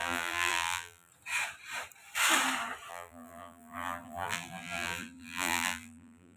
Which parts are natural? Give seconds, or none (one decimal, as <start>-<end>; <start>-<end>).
1.1-2.9